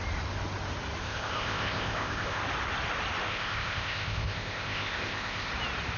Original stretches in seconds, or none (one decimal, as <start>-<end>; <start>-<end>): 0.0-1.0; 2.4-3.3; 5.5-6.0